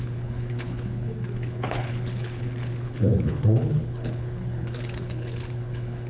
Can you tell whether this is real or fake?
fake